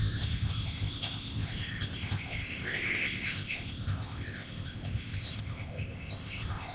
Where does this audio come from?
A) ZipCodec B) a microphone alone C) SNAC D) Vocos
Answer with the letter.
A